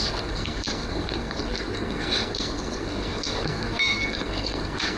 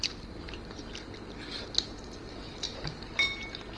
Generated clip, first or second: first